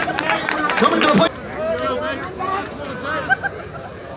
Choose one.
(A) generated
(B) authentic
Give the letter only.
B